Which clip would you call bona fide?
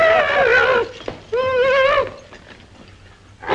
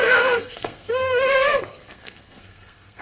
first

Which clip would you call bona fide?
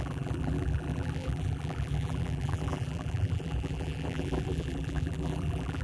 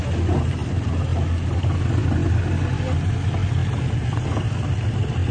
second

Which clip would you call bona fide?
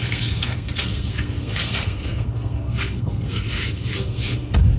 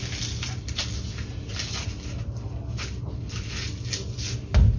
second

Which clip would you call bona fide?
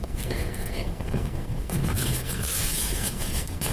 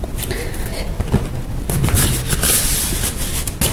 second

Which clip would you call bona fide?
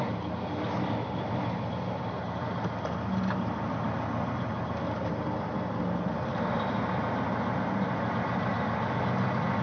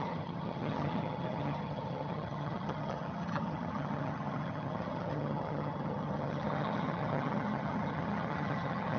first